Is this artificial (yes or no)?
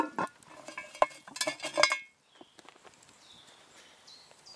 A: no